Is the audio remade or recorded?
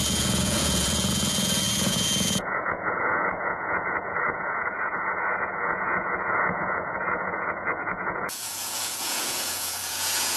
remade